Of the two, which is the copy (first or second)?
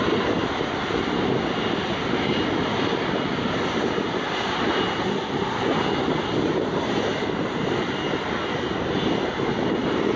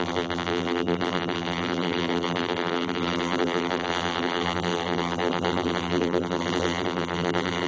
second